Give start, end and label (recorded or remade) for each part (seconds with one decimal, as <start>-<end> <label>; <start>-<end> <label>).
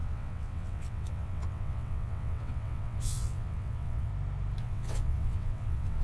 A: 0.0-4.1 remade; 4.1-4.6 recorded; 4.6-6.0 remade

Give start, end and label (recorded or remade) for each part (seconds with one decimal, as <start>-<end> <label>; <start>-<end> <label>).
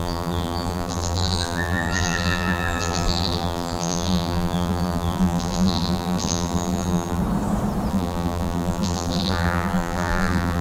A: 0.0-7.2 remade; 7.2-7.9 recorded; 7.9-10.6 remade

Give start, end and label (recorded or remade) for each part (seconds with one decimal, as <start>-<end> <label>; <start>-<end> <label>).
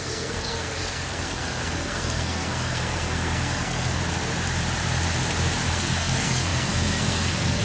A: 0.0-4.0 remade; 4.0-5.7 recorded; 5.7-7.6 remade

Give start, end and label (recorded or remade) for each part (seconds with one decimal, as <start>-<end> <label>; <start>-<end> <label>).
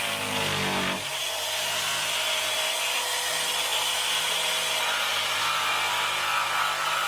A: 0.0-7.1 recorded